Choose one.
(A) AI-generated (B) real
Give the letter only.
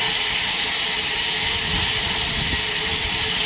A